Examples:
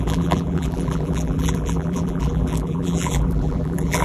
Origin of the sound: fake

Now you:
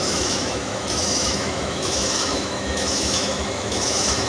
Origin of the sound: fake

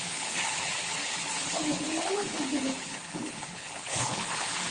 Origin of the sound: fake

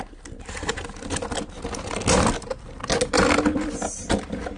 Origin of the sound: real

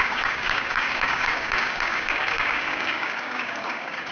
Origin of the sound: fake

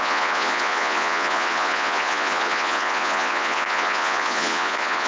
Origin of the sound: fake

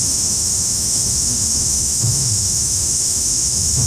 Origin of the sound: fake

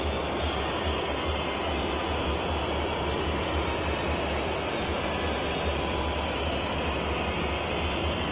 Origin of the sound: real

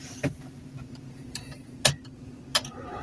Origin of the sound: fake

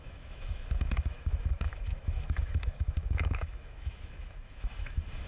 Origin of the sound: fake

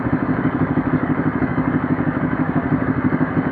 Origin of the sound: fake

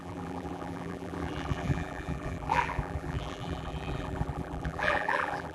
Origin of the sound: fake